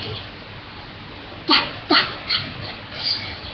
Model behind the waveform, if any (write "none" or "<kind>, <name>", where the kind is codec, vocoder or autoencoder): none